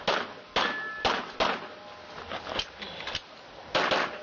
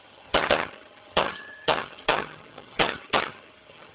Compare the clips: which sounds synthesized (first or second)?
second